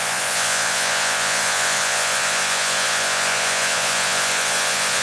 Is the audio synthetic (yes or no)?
yes